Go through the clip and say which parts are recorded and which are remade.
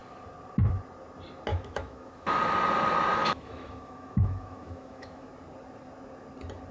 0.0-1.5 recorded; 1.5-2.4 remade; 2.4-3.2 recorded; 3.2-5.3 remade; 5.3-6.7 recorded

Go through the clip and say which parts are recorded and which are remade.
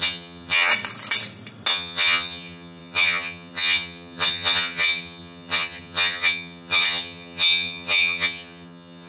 0.0-0.7 remade; 0.7-1.7 recorded; 1.7-9.1 remade